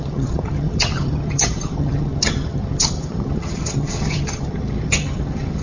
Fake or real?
fake